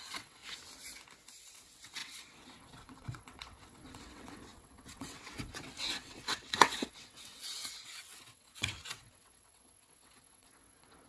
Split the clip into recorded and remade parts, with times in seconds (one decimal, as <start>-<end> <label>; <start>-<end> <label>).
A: 0.0-0.4 remade; 0.4-1.5 recorded; 1.5-11.1 remade